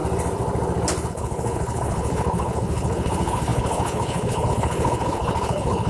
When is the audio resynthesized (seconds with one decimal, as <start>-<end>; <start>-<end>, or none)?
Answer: 1.1-5.9